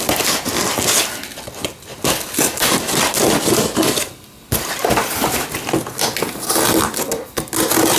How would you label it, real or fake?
real